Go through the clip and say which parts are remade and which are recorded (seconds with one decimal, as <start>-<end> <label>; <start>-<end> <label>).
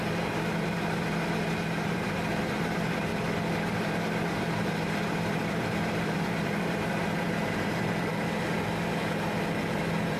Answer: 0.0-3.1 remade; 3.1-3.7 recorded; 3.7-8.1 remade; 8.1-9.6 recorded; 9.6-10.2 remade